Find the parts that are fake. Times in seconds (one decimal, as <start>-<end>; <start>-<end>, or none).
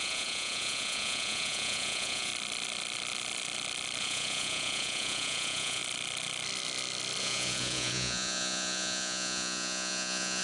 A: 0.0-2.3; 4.0-5.8; 7.2-10.4